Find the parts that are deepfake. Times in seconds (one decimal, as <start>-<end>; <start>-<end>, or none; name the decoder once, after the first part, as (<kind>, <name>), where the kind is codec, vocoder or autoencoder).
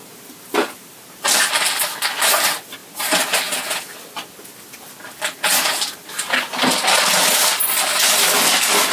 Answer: 0.0-1.5 (vocoder, BigVGAN v2)